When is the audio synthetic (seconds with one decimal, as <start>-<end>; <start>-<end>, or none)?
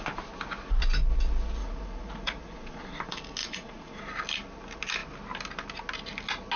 1.6-3.0; 3.4-4.0